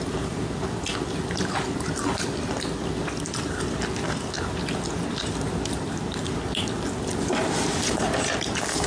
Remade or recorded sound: recorded